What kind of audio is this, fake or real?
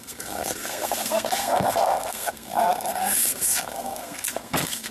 fake